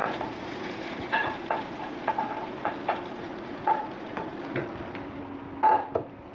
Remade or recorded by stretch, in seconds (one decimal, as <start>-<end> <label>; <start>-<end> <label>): 0.0-2.7 remade; 2.7-3.1 recorded; 3.1-4.4 remade; 4.4-6.3 recorded

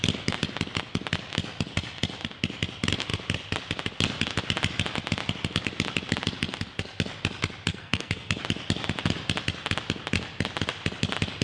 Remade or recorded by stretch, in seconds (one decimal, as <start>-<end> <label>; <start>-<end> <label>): 0.0-7.7 recorded; 7.7-8.4 remade; 8.4-11.4 recorded